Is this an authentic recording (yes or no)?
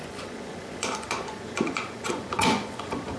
no